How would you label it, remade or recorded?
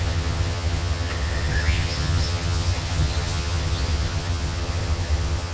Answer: remade